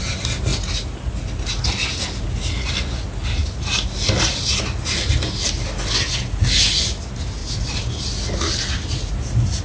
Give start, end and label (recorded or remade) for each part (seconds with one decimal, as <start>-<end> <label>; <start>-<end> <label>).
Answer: 0.0-7.4 recorded; 7.4-9.1 remade; 9.1-9.6 recorded